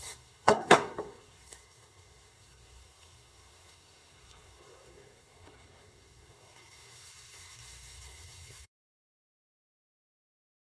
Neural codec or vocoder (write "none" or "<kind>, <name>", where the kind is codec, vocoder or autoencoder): codec, SNAC